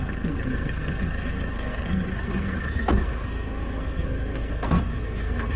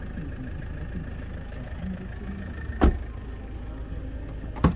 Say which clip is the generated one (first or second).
first